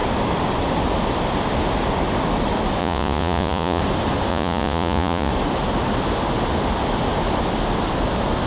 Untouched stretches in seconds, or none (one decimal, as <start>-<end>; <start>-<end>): 0.0-2.8; 3.8-4.3; 5.3-8.5